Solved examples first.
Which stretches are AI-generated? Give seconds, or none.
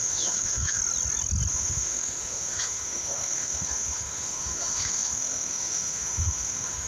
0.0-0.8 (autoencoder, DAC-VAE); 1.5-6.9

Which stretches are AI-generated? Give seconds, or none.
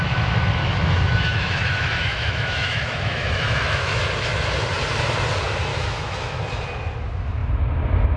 0.6-4.0 (autoencoder, DAC-VAE); 5.7-6.4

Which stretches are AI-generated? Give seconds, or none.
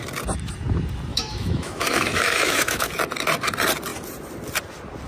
1.1-2.9 (autoencoder, DAC-VAE)